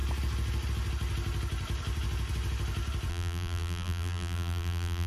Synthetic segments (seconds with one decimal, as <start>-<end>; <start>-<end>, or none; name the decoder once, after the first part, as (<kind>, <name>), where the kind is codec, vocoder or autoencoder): 3.1-5.1 (vocoder, BigVGAN v2)